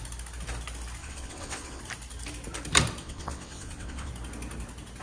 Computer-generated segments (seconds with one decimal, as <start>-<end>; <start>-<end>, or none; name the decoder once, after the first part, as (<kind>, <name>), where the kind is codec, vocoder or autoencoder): 1.0-1.8 (vocoder, WaveNeXt); 3.0-4.1